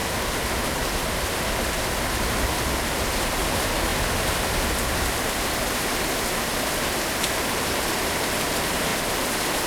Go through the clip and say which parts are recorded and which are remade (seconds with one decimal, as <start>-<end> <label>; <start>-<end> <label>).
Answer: 0.0-3.0 recorded; 3.0-3.9 remade; 3.9-7.4 recorded; 7.4-8.9 remade; 8.9-9.7 recorded